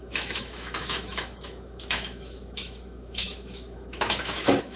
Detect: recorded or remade remade